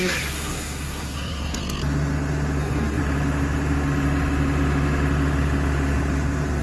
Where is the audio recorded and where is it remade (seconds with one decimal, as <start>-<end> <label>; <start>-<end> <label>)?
0.0-1.6 remade; 1.6-2.6 recorded; 2.6-3.0 remade; 3.0-6.6 recorded